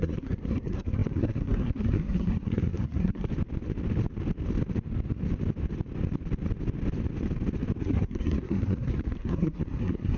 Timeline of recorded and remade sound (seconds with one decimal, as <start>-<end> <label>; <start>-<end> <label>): 0.0-3.3 remade; 3.3-7.8 recorded; 7.8-10.2 remade